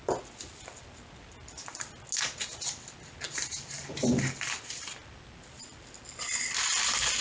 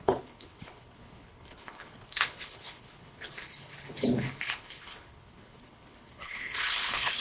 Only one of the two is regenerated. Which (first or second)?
second